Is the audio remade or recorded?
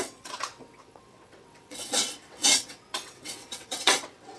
remade